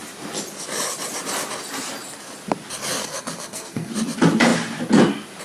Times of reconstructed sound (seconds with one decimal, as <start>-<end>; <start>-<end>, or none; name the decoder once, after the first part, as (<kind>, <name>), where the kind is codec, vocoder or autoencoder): 3.0-3.9 (codec, SNAC)